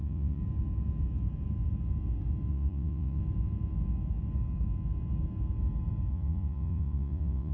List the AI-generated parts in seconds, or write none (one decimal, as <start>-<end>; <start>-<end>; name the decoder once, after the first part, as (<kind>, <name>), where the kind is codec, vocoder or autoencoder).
0.0-0.4 (vocoder, Vocos); 2.5-3.2; 6.1-7.5

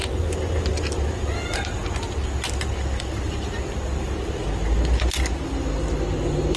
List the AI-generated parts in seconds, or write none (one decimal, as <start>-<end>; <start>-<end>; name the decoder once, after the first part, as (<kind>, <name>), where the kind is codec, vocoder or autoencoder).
none

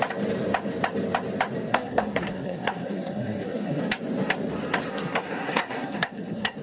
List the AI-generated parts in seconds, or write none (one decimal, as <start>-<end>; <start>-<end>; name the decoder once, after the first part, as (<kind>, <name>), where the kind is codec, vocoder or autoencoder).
1.7-3.8 (codec, SNAC); 4.9-6.6